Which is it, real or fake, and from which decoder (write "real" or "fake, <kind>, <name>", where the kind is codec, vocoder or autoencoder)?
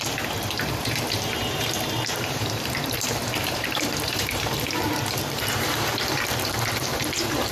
fake, vocoder, BigVGAN v2